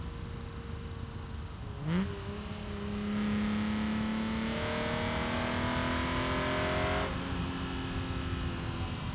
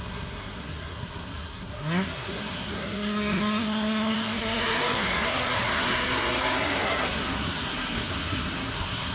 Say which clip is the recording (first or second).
first